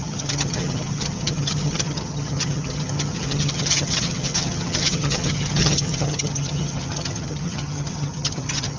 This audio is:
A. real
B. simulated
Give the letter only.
B